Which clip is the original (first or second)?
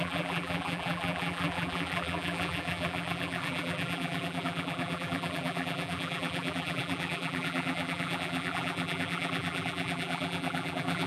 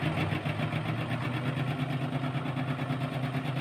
second